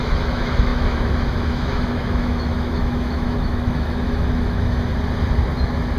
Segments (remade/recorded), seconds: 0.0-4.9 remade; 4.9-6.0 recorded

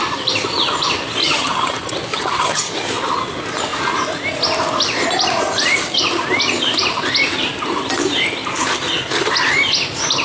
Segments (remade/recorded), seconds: 0.0-1.2 recorded; 1.2-1.7 remade; 1.7-2.1 recorded; 2.1-2.7 remade; 2.7-10.2 recorded

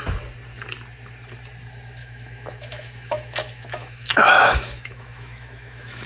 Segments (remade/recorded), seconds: 0.0-2.0 recorded; 2.0-6.1 remade

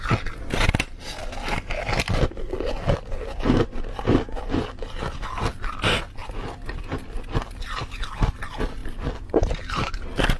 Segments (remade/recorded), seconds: 0.0-10.4 recorded

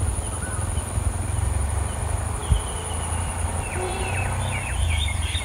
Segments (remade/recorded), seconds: 0.0-5.4 recorded

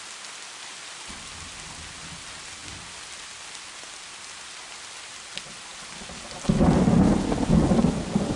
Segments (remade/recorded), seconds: 0.0-8.4 recorded